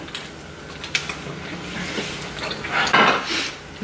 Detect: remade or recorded recorded